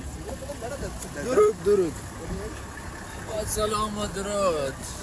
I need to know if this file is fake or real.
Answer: real